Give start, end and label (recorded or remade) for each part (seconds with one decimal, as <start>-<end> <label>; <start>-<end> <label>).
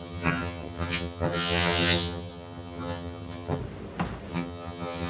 0.0-3.6 remade; 3.6-4.3 recorded; 4.3-5.1 remade